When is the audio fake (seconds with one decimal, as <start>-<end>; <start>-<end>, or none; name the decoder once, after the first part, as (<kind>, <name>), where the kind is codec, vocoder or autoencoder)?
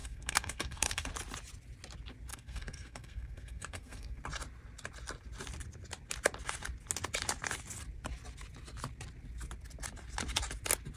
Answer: 0.0-1.1 (codec, SNAC); 2.3-4.2